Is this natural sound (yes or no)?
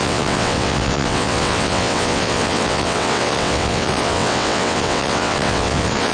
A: no